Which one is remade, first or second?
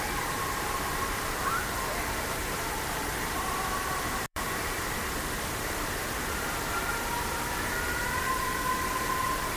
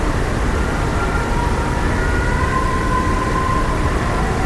first